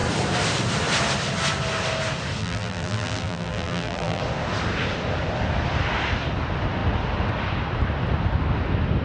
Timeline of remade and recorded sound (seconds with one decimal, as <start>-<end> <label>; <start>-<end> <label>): 0.0-2.4 recorded; 2.4-4.2 remade; 4.2-9.0 recorded